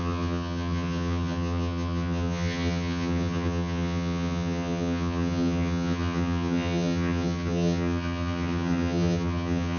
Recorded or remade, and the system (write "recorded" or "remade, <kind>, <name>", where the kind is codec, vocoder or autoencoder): remade, vocoder, HiFi-GAN